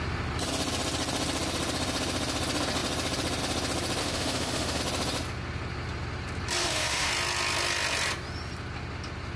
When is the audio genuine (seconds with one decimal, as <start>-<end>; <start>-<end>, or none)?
0.0-4.0; 4.8-6.6; 7.1-9.4